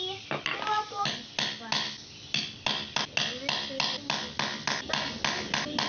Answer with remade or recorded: recorded